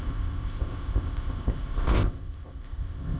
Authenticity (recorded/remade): remade